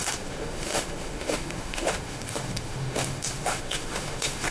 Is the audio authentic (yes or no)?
no